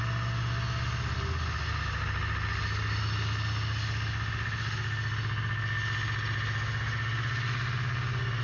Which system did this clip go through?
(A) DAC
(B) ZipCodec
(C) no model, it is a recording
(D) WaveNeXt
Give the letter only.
C